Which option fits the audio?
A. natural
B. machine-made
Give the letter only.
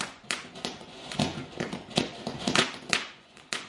B